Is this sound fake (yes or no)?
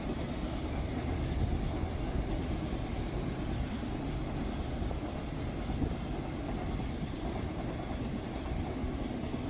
no